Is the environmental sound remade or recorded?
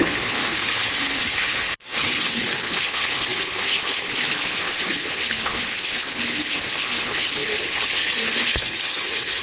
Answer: remade